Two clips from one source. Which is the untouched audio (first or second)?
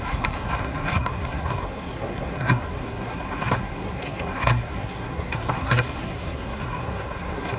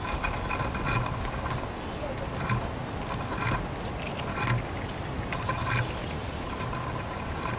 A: second